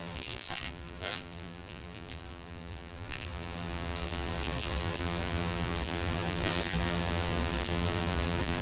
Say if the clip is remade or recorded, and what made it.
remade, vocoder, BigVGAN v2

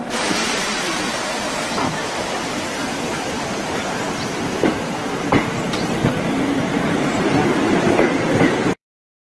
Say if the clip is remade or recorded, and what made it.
remade, vocoder, BigVGAN v2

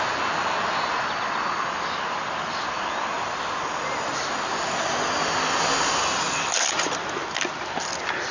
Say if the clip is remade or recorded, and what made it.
recorded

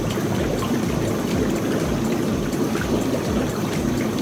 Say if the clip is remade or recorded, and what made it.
remade, vocoder, BigVGAN v2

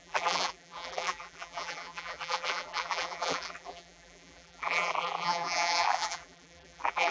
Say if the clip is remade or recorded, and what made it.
remade, vocoder, BigVGAN v2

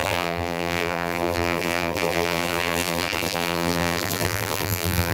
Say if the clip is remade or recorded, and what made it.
remade, vocoder, BigVGAN v2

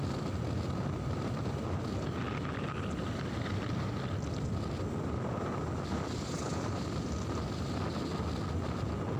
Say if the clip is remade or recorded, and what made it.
recorded